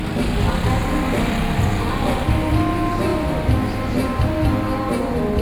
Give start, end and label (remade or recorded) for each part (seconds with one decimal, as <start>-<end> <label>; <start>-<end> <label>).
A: 0.0-0.8 recorded; 0.8-1.9 remade; 1.9-5.4 recorded